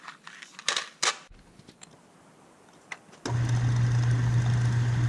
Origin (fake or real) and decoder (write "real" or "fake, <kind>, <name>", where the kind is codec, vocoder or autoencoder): real